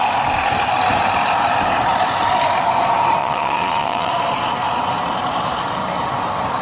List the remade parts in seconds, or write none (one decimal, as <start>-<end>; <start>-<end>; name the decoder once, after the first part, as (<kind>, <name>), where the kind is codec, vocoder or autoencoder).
3.2-4.1 (vocoder, Vocos)